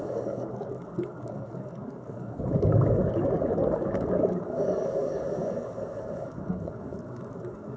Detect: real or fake fake